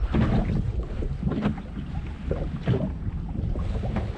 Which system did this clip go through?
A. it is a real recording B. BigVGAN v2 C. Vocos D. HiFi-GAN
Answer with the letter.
A